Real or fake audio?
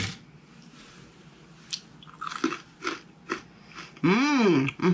real